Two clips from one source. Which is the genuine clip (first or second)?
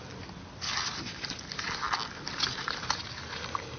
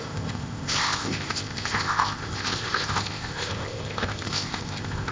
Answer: first